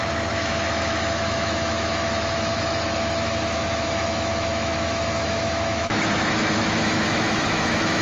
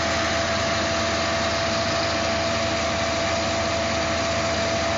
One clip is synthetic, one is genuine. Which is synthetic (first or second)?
first